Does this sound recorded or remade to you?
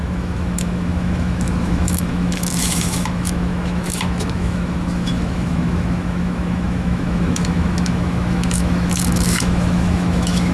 remade